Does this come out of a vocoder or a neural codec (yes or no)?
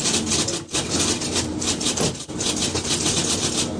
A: no